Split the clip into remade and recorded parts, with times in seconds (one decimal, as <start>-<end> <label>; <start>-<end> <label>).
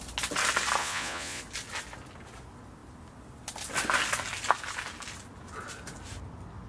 0.0-0.8 recorded; 0.8-1.4 remade; 1.4-6.7 recorded